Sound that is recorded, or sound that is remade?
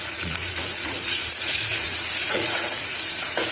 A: remade